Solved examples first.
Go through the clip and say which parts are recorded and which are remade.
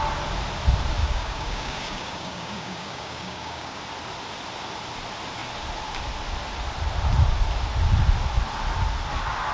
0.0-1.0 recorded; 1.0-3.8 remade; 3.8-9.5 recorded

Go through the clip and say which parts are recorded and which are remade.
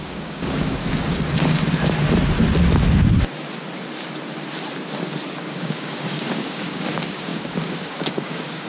0.0-0.8 remade; 0.8-5.4 recorded; 5.4-8.7 remade